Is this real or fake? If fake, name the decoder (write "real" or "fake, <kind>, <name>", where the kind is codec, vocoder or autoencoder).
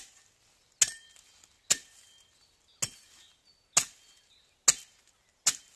real